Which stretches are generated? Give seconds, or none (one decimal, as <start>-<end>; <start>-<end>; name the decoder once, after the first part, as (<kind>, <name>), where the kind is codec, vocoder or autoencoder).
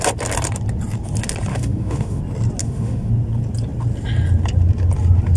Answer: 1.5-2.2 (autoencoder, DAC-VAE); 2.6-3.1